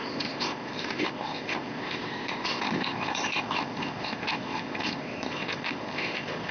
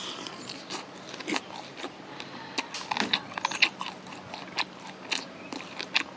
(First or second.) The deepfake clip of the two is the first